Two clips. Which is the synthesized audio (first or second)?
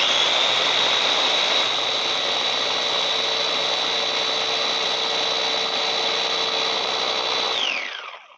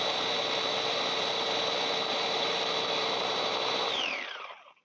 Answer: second